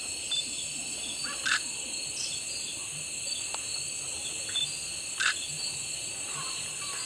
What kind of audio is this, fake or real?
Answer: real